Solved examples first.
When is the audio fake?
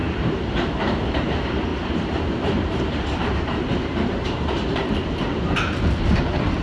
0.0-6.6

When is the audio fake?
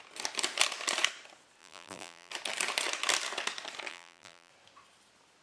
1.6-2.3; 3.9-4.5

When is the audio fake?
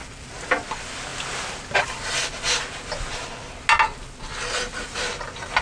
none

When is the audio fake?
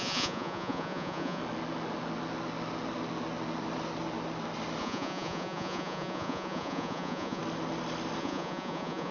0.0-1.4; 4.8-7.4; 8.2-9.1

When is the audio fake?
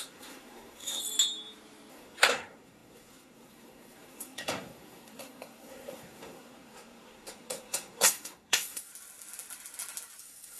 0.0-1.0; 1.9-8.9; 10.2-10.6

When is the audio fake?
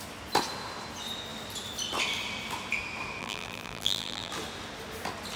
3.2-4.3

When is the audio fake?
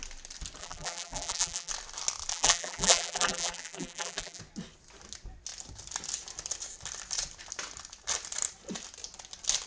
0.6-1.7; 2.3-4.4